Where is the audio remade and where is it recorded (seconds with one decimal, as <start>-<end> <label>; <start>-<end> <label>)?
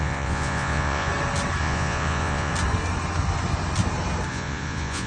0.0-1.1 remade; 1.1-1.6 recorded; 1.6-2.5 remade; 2.5-4.3 recorded; 4.3-5.1 remade